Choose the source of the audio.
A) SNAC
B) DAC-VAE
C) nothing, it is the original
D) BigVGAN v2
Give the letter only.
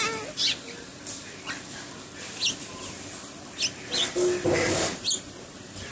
C